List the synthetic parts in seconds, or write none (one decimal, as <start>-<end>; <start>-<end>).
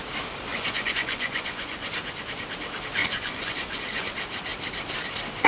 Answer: 0.5-1.9; 3.0-4.1